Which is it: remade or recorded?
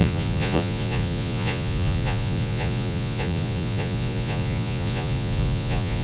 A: remade